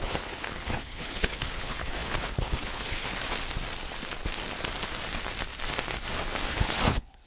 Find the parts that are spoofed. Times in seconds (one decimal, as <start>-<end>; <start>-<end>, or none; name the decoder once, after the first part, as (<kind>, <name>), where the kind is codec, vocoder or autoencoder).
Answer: 0.0-3.1 (codec, HILCodec); 6.5-7.3